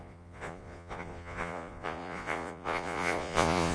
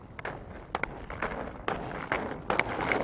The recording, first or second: second